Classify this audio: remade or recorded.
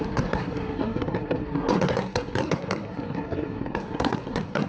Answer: remade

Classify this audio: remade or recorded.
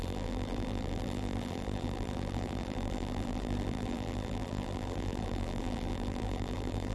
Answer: remade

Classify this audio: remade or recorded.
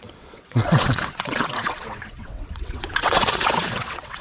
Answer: remade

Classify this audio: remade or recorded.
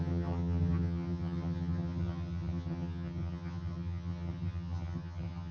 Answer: remade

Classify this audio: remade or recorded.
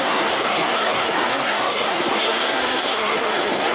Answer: remade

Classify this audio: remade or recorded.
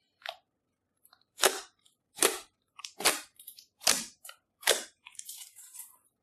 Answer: remade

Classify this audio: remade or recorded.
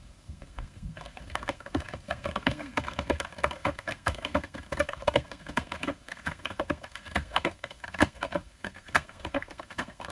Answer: remade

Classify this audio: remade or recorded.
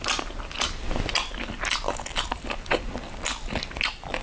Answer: recorded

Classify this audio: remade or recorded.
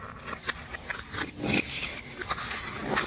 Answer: recorded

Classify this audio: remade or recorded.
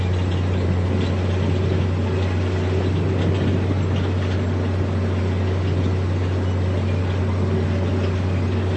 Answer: recorded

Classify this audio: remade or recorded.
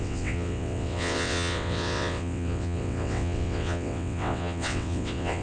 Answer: remade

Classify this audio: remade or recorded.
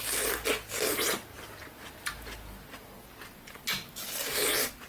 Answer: recorded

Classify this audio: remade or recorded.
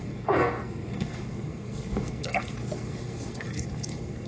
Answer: remade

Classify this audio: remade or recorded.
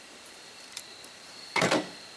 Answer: remade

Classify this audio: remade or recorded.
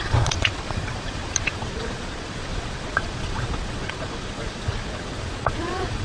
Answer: remade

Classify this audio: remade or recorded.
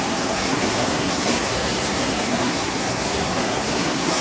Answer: remade